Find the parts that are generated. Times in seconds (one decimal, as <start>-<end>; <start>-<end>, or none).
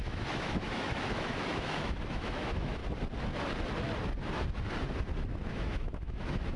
0.0-2.8; 5.5-6.6